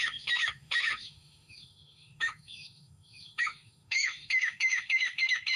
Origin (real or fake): fake